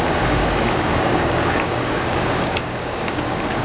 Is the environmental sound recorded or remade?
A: remade